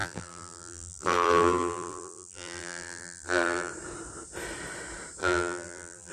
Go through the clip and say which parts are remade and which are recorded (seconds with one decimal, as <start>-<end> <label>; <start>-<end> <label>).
0.0-3.7 remade; 3.7-5.2 recorded; 5.2-6.1 remade